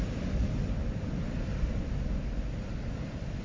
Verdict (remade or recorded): recorded